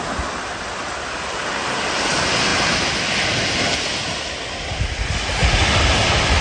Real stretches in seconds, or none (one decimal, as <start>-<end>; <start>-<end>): 0.0-6.4